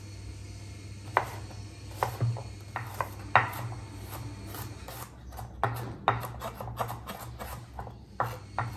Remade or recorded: recorded